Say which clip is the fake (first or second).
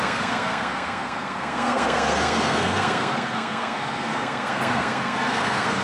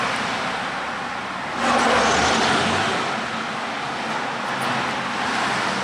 first